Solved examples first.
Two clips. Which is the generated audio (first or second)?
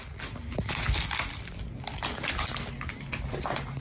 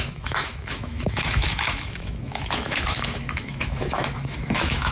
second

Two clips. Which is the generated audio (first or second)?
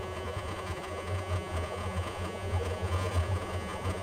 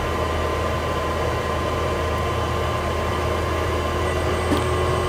first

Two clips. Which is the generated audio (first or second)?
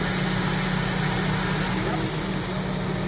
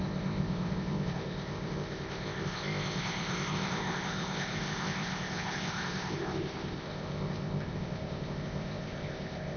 second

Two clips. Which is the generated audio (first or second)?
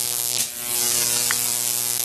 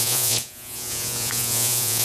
second